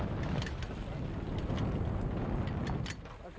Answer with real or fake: real